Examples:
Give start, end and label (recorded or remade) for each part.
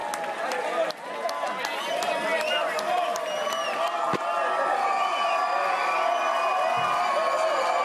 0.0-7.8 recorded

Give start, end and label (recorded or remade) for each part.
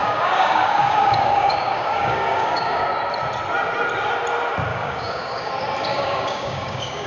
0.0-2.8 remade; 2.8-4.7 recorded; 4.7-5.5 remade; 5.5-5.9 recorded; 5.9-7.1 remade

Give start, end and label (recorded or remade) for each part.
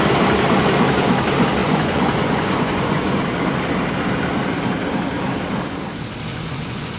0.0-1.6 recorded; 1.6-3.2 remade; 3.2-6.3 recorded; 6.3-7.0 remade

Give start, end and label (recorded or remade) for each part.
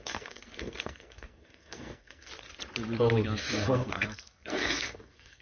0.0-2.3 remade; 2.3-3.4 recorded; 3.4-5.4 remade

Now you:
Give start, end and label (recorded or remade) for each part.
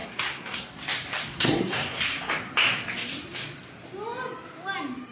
0.0-0.7 remade; 0.7-1.3 recorded; 1.3-2.0 remade; 2.0-5.1 recorded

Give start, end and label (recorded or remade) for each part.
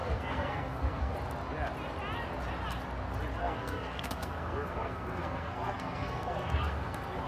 0.0-1.1 remade; 1.1-3.4 recorded; 3.4-7.3 remade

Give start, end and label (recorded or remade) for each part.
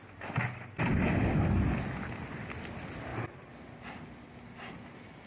0.0-5.3 recorded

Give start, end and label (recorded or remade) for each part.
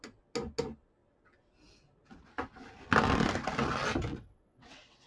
0.0-4.1 recorded; 4.1-5.1 remade